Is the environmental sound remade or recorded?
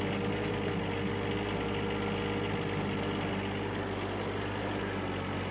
recorded